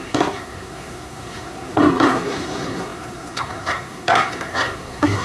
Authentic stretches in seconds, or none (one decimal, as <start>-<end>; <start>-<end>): none